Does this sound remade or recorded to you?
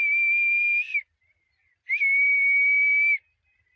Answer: recorded